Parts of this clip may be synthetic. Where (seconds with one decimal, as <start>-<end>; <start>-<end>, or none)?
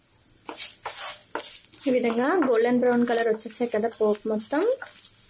none